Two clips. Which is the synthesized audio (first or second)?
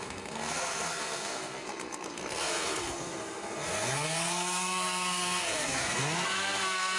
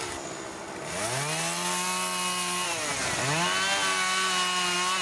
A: first